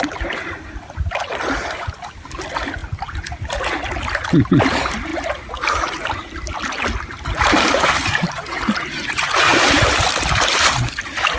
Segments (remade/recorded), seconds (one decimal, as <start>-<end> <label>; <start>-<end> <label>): 0.0-11.4 recorded